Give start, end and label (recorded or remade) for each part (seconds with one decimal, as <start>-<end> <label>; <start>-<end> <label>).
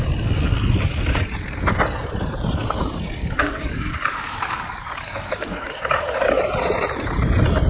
0.0-3.2 recorded; 3.2-6.4 remade; 6.4-7.7 recorded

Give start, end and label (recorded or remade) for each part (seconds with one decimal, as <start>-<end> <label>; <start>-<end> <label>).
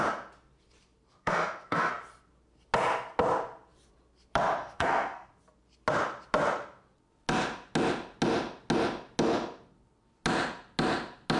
0.0-1.1 recorded; 1.1-1.9 remade; 1.9-4.6 recorded; 4.6-5.3 remade; 5.3-11.4 recorded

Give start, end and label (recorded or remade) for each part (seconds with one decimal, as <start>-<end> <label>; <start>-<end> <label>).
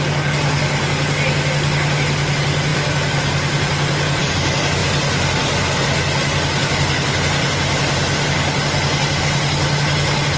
0.0-10.4 recorded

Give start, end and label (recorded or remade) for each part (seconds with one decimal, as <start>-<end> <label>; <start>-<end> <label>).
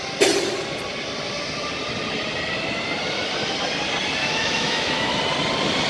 0.0-4.2 recorded; 4.2-5.2 remade; 5.2-5.9 recorded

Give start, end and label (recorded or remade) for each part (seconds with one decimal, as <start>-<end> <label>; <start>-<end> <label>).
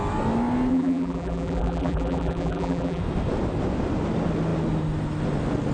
0.0-0.7 recorded; 0.7-3.0 remade; 3.0-5.7 recorded